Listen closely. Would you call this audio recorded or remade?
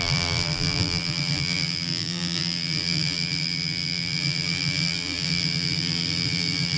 remade